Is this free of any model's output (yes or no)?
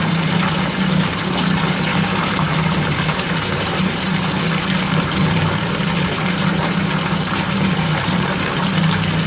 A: no